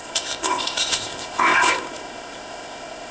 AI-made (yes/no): yes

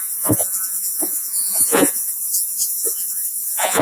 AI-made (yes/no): yes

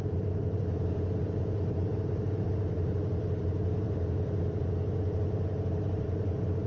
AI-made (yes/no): yes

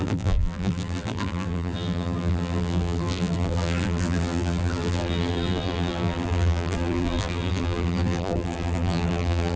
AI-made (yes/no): yes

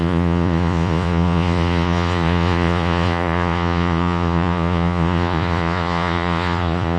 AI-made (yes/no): yes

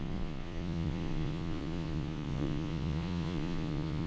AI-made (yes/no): yes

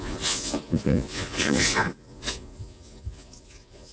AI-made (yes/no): yes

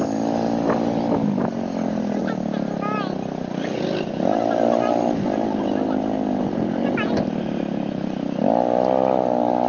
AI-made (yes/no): no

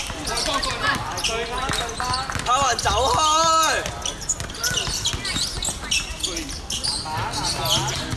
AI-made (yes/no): no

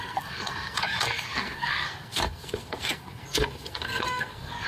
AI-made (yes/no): yes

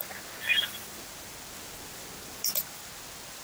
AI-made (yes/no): no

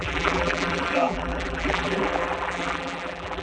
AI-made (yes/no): yes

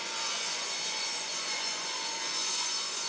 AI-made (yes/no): yes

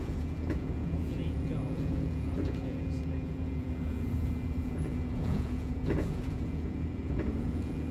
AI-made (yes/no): yes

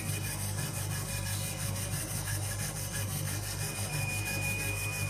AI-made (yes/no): yes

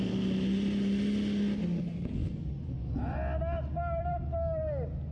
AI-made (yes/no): no